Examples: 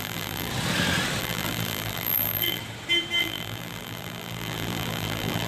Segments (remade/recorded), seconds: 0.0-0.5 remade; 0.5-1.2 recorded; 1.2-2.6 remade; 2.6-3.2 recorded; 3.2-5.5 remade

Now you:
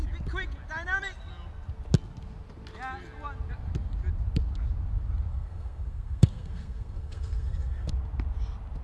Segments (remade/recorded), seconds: 0.0-5.3 recorded; 5.3-7.9 remade; 7.9-8.8 recorded

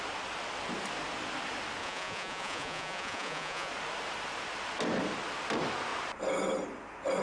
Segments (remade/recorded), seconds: 0.0-1.8 recorded; 1.8-3.7 remade; 3.7-7.2 recorded

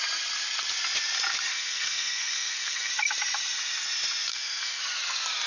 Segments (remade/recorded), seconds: 0.0-1.5 recorded; 1.5-2.9 remade; 2.9-4.3 recorded; 4.3-4.8 remade; 4.8-5.5 recorded

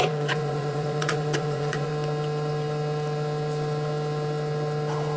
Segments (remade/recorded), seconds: 0.0-1.9 remade; 1.9-5.2 recorded

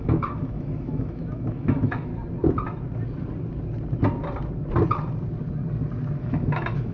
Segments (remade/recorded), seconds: 0.0-2.1 remade; 2.1-6.2 recorded; 6.2-6.9 remade

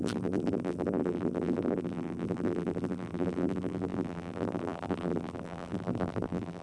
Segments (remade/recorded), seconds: 0.0-6.6 remade

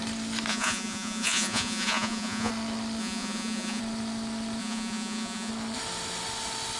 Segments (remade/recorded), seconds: 0.0-0.5 recorded; 0.5-2.5 remade; 2.5-3.0 recorded; 3.0-3.8 remade; 3.8-4.6 recorded; 4.6-5.5 remade; 5.5-6.8 recorded